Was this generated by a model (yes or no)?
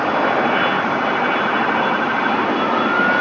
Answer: no